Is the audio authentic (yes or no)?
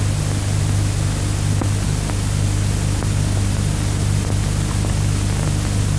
yes